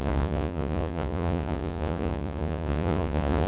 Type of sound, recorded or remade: remade